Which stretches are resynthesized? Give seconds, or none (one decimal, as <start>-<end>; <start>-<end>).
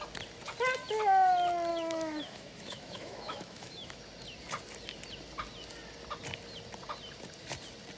1.7-4.0